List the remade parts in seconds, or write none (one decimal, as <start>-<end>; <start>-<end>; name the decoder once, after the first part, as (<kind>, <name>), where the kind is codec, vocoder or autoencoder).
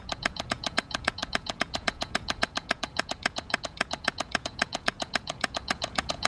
0.0-6.3 (vocoder, Vocos)